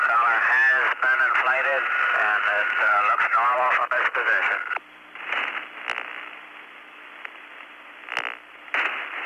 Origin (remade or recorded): recorded